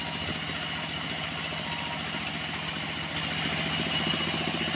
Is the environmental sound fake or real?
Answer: real